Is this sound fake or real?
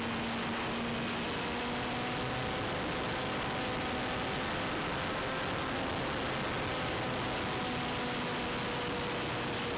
real